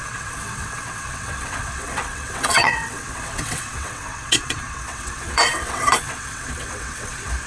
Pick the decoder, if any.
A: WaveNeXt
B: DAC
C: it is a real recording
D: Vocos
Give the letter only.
A